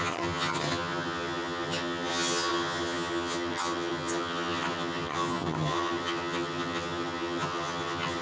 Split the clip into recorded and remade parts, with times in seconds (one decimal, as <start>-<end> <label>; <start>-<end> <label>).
0.0-8.2 remade